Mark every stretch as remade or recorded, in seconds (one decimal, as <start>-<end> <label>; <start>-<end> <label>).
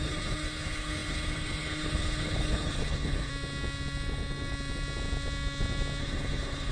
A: 0.0-3.3 remade; 3.3-6.0 recorded; 6.0-6.7 remade